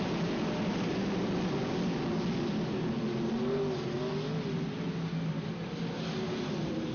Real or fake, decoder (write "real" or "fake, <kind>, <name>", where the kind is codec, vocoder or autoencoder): real